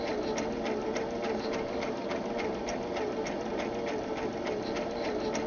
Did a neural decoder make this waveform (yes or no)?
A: no